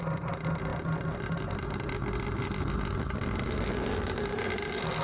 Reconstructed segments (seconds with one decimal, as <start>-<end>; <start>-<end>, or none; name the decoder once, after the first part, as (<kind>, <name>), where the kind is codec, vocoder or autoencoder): none